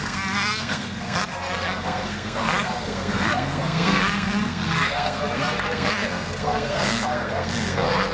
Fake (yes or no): yes